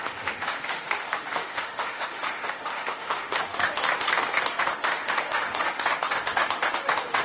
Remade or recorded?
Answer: remade